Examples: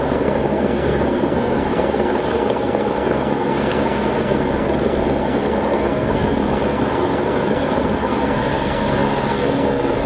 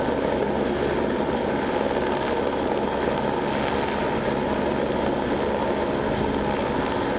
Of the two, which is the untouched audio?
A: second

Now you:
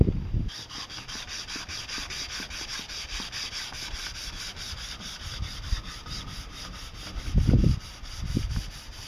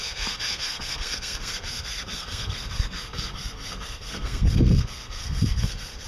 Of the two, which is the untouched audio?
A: first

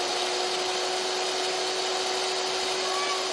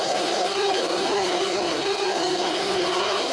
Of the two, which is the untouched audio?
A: first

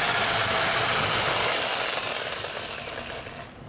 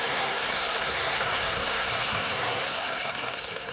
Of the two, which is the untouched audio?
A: first